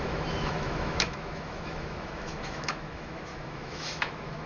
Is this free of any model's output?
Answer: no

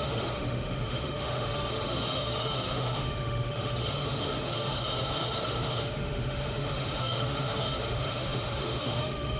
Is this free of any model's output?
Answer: no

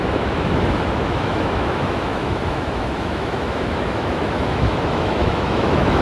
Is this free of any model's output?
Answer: no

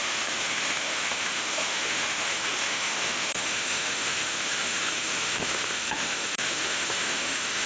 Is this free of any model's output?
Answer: no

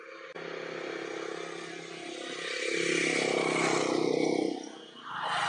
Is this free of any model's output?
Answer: yes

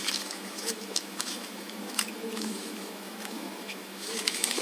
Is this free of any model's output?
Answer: no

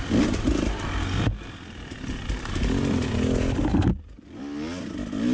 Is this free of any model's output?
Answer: yes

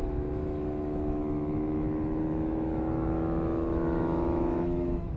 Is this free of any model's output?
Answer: no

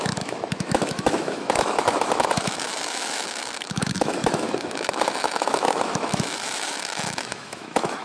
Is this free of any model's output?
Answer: no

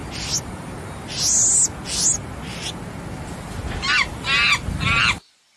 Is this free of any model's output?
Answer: yes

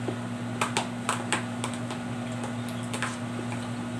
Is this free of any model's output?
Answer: yes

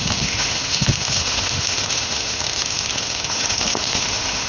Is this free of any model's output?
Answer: no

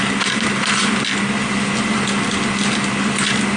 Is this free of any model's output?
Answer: yes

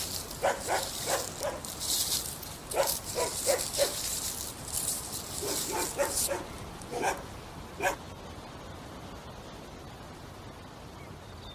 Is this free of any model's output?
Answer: yes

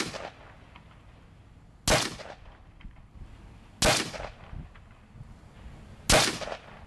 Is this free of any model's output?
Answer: yes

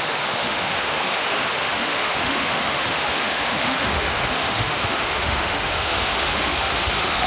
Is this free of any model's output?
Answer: no